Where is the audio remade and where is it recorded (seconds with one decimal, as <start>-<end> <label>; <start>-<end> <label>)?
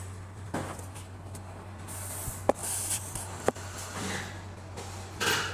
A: 0.0-2.6 recorded; 2.6-5.5 remade